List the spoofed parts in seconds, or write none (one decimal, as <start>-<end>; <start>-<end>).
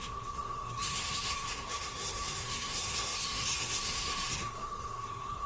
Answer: 0.0-5.5